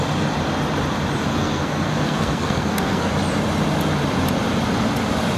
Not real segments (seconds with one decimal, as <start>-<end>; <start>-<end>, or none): 1.3-3.1

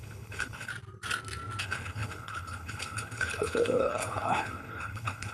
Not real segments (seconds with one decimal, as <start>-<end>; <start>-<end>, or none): 0.0-0.7; 1.6-5.3

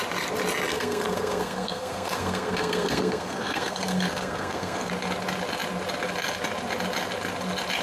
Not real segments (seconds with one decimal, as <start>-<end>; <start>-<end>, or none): 0.7-4.9

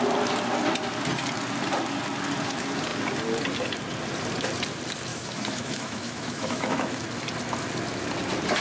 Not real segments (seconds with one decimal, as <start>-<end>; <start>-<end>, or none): 5.1-7.0

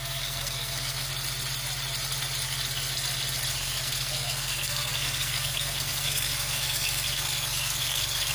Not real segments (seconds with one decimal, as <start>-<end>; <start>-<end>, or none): 0.0-1.1; 3.5-8.3

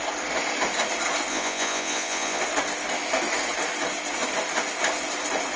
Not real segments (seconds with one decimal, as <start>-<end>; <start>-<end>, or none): 1.3-2.4

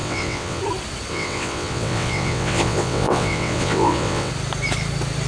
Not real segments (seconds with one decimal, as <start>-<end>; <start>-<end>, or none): 0.0-0.6; 1.1-4.3